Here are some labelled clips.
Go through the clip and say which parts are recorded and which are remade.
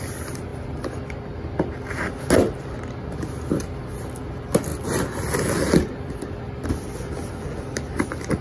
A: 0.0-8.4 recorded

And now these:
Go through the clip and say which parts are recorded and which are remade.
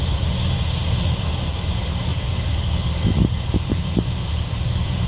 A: 0.0-5.1 remade